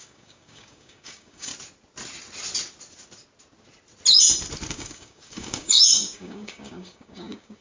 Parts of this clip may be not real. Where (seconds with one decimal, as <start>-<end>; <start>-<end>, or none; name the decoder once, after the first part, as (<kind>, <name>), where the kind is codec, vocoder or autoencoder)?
0.0-1.5 (codec, DAC); 4.7-7.6